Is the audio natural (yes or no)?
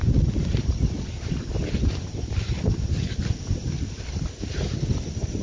yes